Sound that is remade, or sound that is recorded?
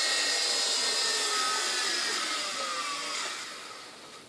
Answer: recorded